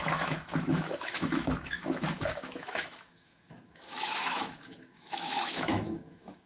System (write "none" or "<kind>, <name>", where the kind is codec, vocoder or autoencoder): autoencoder, DAC-VAE